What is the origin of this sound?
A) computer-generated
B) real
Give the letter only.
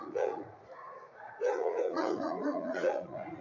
A